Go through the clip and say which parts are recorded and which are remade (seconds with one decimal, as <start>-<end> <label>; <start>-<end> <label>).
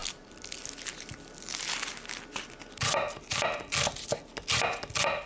0.0-5.3 recorded